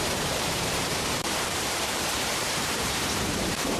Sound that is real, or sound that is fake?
fake